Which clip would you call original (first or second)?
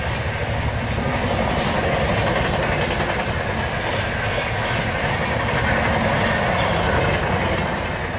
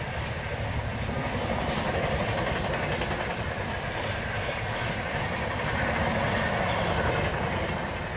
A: first